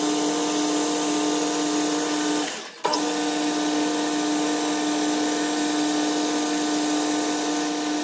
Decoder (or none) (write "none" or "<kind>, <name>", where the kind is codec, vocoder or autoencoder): none